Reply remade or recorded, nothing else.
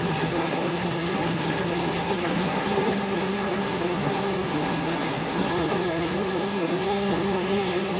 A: remade